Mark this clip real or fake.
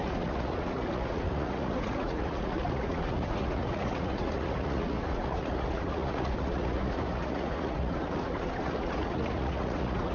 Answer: fake